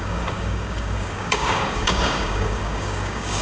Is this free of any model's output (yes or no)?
no